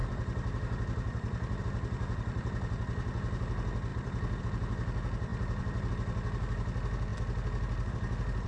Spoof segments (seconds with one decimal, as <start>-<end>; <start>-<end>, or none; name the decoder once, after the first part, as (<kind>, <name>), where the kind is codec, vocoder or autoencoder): 0.0-1.6 (vocoder, BigVGAN v2); 3.9-4.4; 5.3-5.9; 7.1-7.9